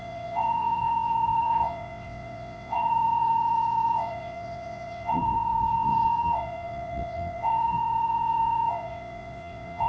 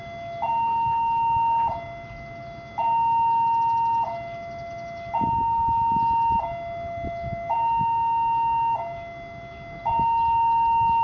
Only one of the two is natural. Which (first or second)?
second